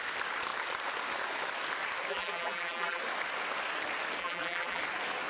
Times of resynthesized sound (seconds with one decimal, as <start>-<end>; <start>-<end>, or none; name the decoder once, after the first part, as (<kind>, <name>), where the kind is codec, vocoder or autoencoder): 2.1-3.0 (vocoder, BigVGAN v2); 4.2-4.8